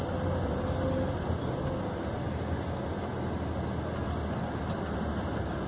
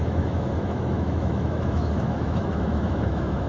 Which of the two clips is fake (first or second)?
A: second